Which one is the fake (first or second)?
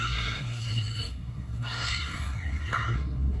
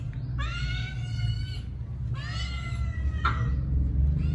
first